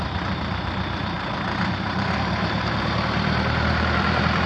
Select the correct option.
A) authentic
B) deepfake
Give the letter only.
B